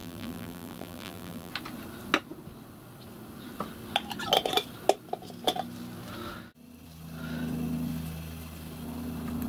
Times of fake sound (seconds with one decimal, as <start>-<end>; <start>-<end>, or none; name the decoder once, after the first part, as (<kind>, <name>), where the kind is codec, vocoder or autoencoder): 0.0-1.5 (vocoder, BigVGAN v2)